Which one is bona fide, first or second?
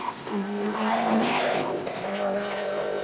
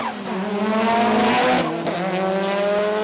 second